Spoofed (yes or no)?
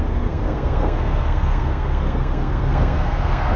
yes